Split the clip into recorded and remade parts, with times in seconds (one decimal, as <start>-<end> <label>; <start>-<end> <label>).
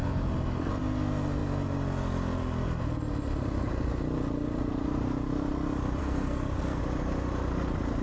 0.0-6.0 recorded; 6.0-6.8 remade; 6.8-8.0 recorded